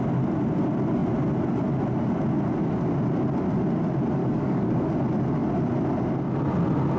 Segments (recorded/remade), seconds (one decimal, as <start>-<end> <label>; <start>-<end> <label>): 0.0-4.2 recorded; 4.2-4.9 remade; 4.9-7.0 recorded